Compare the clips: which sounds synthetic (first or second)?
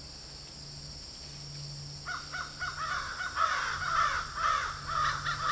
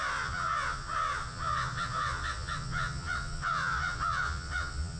second